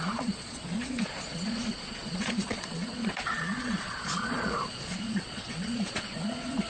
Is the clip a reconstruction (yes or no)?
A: yes